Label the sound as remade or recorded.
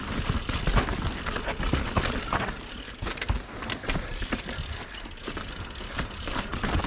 recorded